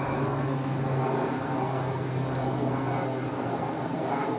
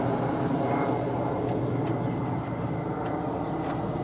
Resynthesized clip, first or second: first